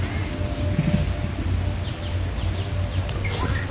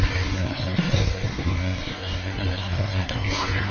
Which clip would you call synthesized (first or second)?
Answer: second